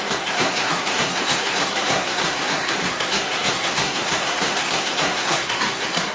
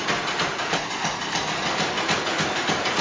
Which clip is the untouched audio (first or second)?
second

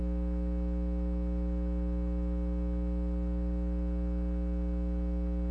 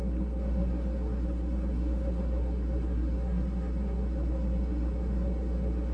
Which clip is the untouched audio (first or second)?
first